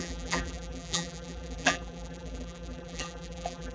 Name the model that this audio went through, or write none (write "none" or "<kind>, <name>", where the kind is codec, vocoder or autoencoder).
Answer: vocoder, BigVGAN v2